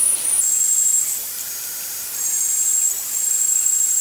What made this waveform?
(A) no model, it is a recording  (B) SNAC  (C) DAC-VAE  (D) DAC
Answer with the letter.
A